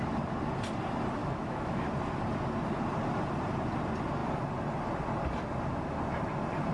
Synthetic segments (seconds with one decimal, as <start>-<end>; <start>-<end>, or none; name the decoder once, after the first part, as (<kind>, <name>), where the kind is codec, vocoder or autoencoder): 1.2-1.9 (autoencoder, DAC-VAE)